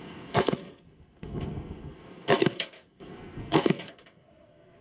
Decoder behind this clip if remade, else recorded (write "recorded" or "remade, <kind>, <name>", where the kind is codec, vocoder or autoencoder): remade, codec, SNAC